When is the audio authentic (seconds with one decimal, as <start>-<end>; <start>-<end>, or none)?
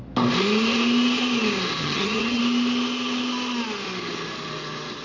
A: 0.0-1.8; 2.4-5.0